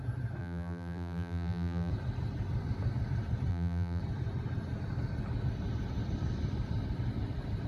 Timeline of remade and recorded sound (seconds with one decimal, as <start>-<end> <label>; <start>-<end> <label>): 0.0-0.4 recorded; 0.4-1.9 remade; 1.9-3.5 recorded; 3.5-4.0 remade; 4.0-7.7 recorded